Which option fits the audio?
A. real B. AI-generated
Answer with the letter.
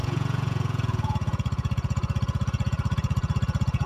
B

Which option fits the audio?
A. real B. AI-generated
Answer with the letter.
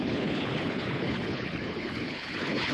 B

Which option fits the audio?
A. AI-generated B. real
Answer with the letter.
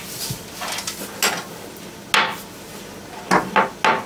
B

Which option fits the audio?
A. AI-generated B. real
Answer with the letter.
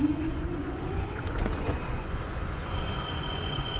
A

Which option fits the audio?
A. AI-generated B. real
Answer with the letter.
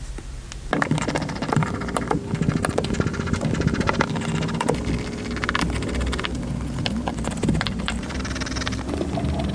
B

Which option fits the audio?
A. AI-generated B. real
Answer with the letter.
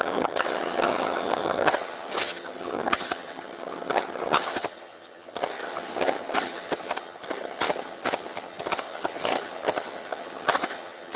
A